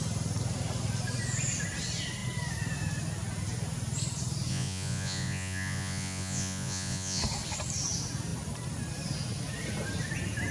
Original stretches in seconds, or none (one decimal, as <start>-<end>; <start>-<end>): 0.0-4.5; 7.2-10.5